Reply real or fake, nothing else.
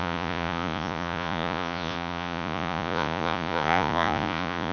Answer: fake